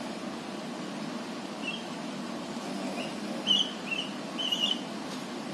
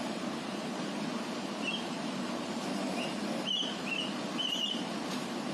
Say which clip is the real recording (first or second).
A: first